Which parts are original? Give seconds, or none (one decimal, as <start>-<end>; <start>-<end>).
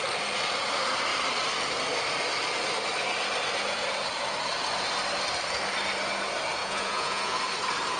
0.0-6.6; 7.4-8.0